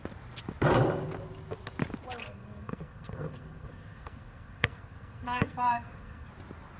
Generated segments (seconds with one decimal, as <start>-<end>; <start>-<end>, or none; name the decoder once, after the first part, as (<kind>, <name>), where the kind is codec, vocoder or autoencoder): 2.2-6.3 (codec, SNAC)